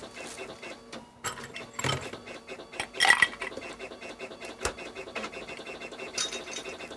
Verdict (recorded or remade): recorded